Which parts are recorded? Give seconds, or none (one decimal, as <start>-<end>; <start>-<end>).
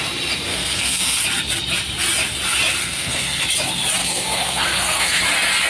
0.0-0.5; 1.2-2.8; 3.4-4.0; 5.2-5.7